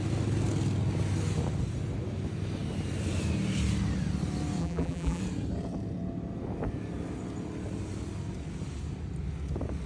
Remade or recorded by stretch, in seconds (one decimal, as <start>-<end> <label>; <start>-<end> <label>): 0.0-4.6 recorded; 4.6-5.2 remade; 5.2-9.9 recorded